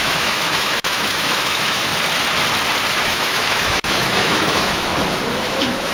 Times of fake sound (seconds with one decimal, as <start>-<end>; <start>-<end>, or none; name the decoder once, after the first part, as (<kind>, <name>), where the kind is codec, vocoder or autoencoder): 0.0-1.9 (autoencoder, DAC-VAE); 2.9-4.9; 5.4-5.9